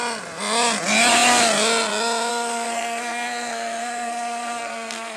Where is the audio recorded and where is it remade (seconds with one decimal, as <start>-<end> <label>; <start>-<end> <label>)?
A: 0.0-2.3 recorded; 2.3-5.2 remade